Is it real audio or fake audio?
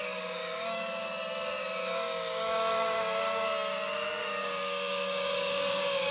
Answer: fake